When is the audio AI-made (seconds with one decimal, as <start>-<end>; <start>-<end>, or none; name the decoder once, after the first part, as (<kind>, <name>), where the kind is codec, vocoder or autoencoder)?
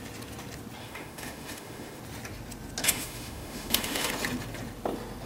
0.8-2.0 (autoencoder, DAC-VAE); 2.8-4.1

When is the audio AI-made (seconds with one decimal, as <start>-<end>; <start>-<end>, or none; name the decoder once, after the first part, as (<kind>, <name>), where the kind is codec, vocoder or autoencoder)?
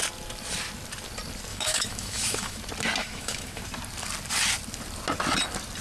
1.5-2.6 (autoencoder, DAC-VAE); 3.0-3.6